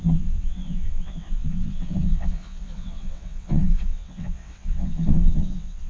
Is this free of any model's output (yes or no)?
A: no